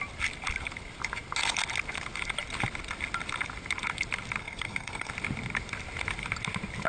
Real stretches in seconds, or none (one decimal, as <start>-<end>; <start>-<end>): 0.0-4.4; 5.1-6.9